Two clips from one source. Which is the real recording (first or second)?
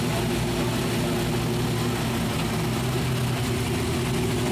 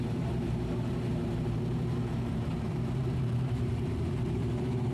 first